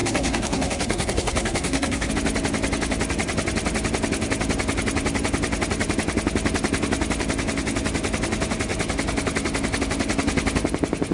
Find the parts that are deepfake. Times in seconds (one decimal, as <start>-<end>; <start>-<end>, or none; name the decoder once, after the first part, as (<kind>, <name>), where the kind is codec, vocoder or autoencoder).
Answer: 0.0-2.1 (codec, SNAC)